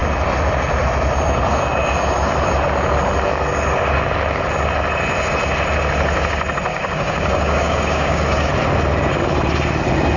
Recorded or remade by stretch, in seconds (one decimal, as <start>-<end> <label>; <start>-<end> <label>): 0.0-6.7 recorded; 6.7-8.5 remade; 8.5-10.2 recorded